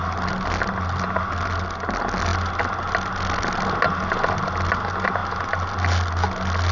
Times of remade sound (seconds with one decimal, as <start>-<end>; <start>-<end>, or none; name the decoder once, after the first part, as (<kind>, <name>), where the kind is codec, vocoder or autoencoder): none